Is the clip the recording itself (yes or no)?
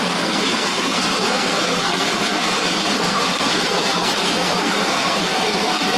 no